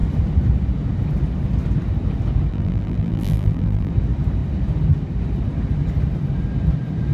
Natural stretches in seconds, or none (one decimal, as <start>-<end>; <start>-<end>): 0.0-2.5; 3.9-7.1